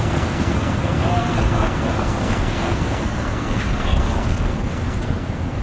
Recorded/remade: remade